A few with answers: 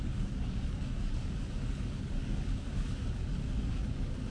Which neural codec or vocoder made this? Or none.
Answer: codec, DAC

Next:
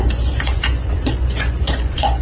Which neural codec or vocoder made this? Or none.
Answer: vocoder, Vocos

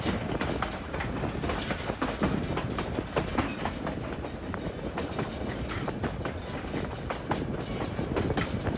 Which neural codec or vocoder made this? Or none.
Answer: none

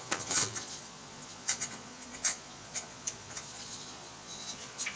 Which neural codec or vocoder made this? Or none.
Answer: vocoder, Vocos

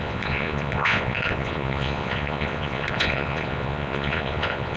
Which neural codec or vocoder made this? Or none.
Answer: vocoder, Vocos